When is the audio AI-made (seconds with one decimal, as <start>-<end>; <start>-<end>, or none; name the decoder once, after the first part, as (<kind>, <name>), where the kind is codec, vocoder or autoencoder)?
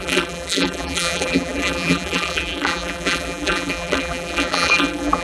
0.0-5.2 (vocoder, BigVGAN v2)